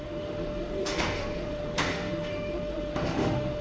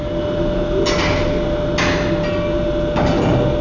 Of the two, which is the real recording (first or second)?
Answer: second